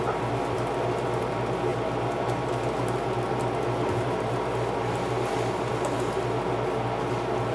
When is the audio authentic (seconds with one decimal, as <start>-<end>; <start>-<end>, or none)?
0.0-7.5